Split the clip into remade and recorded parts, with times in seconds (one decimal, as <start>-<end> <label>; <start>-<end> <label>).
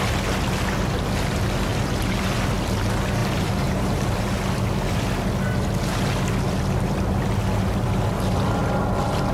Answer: 0.0-1.7 recorded; 1.7-2.2 remade; 2.2-3.2 recorded; 3.2-4.2 remade; 4.2-9.3 recorded